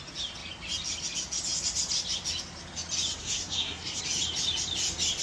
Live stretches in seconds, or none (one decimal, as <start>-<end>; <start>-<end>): 0.0-3.2; 4.0-5.2